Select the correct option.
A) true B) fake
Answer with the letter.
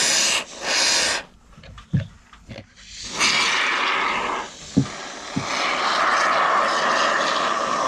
A